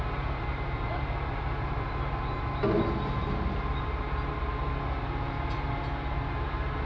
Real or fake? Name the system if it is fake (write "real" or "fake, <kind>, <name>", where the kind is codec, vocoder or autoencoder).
real